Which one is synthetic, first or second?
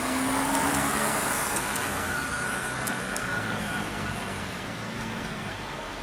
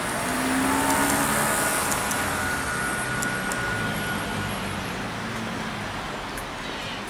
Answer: first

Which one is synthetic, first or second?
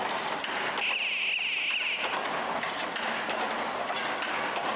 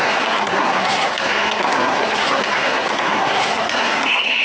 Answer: second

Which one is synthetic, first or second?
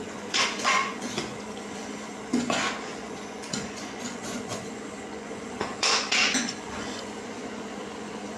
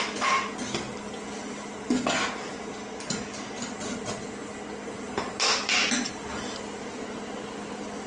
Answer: first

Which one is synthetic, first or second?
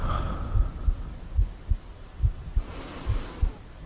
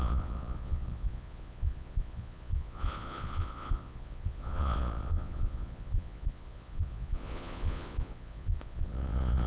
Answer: second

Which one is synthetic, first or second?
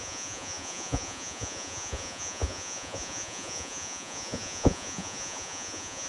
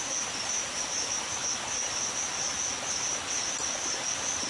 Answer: first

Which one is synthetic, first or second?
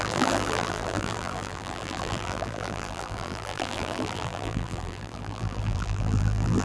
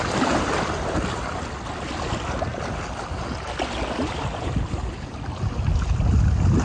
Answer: first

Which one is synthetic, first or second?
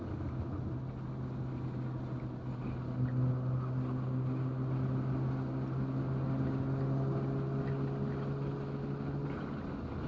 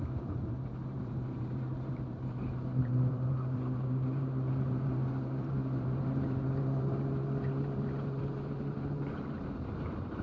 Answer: second